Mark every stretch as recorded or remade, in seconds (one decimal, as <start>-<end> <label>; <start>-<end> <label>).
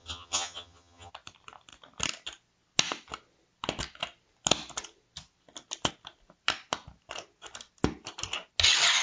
0.0-1.1 remade; 1.1-9.0 recorded